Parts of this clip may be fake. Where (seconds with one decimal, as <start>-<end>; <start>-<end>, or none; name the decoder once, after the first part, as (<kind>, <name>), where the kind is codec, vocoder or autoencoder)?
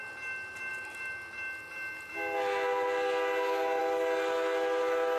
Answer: none